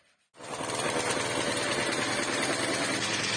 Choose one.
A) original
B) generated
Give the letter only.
A